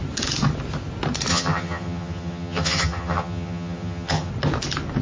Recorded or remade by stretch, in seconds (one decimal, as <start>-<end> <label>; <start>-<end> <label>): 0.0-1.3 recorded; 1.3-4.3 remade; 4.3-5.0 recorded